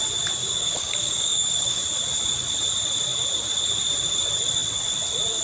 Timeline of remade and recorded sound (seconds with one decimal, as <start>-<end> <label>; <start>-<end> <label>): 0.0-0.4 recorded; 0.4-1.8 remade; 1.8-5.4 recorded